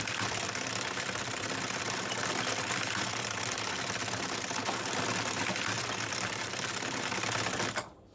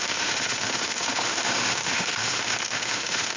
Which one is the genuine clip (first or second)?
first